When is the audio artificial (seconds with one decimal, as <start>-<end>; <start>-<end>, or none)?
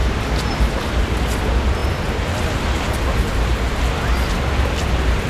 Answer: none